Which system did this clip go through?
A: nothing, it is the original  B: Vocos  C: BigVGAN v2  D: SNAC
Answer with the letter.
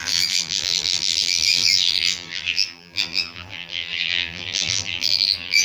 C